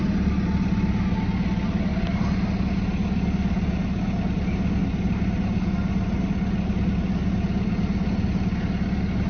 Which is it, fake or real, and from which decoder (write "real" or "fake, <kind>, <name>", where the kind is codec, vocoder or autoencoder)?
real